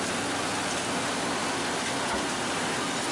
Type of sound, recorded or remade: recorded